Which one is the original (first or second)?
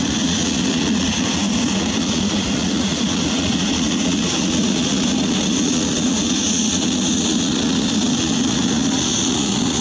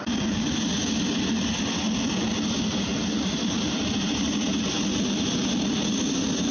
second